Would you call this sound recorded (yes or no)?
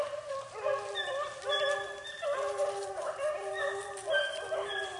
yes